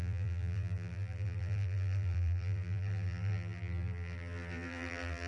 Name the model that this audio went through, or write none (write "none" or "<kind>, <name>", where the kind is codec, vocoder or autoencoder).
vocoder, BigVGAN v2